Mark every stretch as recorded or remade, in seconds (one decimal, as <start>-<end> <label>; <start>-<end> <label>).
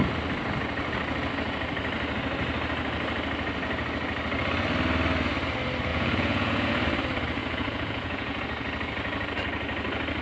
0.0-5.9 recorded; 5.9-6.7 remade; 6.7-7.4 recorded; 7.4-8.4 remade; 8.4-10.2 recorded